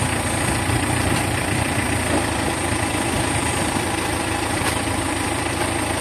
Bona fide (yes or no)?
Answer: no